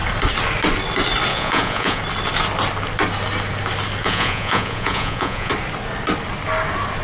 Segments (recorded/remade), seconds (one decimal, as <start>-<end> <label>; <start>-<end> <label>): 0.0-1.3 recorded; 1.3-2.0 remade; 2.0-4.0 recorded; 4.0-5.5 remade; 5.5-7.0 recorded